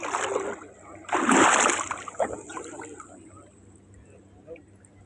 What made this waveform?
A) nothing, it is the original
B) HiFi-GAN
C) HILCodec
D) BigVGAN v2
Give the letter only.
A